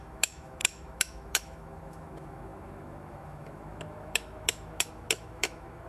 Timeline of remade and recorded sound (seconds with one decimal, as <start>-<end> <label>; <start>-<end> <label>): 0.0-5.9 remade